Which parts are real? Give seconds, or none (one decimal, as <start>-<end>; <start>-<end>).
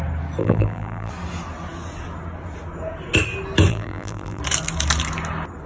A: 0.0-0.4; 1.1-3.7; 4.4-5.7